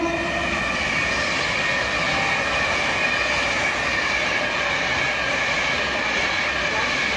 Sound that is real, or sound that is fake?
real